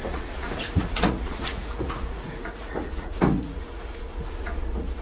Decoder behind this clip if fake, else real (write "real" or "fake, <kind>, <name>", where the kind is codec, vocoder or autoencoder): fake, vocoder, Vocos